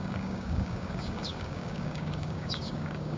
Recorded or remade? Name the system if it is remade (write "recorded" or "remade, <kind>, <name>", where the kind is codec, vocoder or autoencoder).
remade, codec, DAC